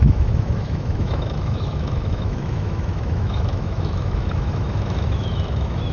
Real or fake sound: fake